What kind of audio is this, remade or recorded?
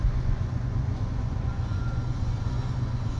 remade